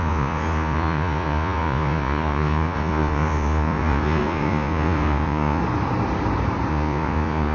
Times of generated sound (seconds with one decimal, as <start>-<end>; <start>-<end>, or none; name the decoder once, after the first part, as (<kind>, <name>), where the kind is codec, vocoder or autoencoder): 0.0-5.6 (vocoder, Vocos); 6.7-7.5